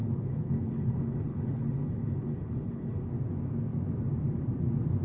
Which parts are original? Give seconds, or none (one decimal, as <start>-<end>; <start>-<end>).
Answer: 3.0-5.0